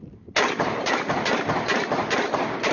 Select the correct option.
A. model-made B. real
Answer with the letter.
B